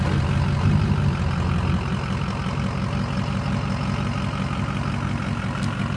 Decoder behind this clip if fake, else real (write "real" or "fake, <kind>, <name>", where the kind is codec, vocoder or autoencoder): real